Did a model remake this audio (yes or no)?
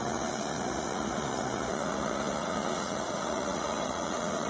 yes